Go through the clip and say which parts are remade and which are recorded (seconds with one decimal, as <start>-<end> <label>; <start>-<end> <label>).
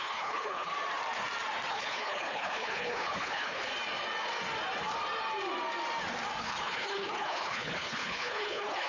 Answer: 0.0-0.7 remade; 0.7-1.7 recorded; 1.7-3.7 remade; 3.7-6.4 recorded; 6.4-8.9 remade